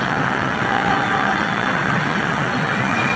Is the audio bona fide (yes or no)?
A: no